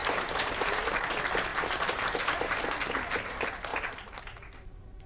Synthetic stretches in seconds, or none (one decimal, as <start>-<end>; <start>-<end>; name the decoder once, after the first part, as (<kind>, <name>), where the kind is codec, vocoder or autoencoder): 0.0-0.9 (vocoder, BigVGAN v2); 1.5-2.6; 3.7-5.1